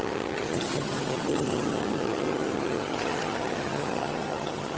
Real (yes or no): no